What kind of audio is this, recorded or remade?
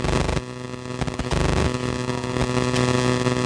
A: recorded